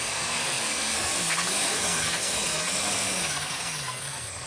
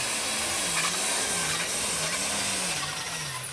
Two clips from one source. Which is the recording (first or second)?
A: second